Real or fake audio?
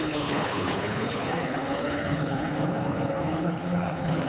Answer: fake